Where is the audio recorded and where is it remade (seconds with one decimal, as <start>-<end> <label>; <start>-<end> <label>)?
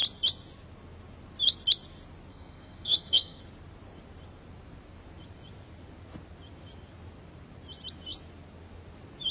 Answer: 0.0-2.3 recorded; 2.3-3.4 remade; 3.4-9.3 recorded